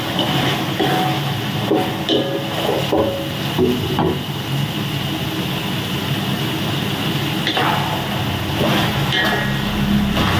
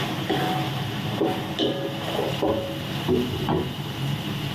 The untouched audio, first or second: first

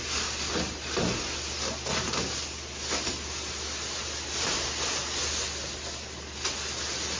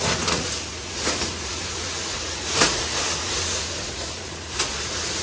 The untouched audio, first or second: first